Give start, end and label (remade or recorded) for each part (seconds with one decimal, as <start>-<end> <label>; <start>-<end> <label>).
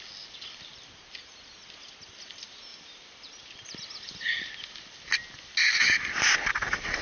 0.0-2.7 recorded; 2.7-5.2 remade; 5.2-7.0 recorded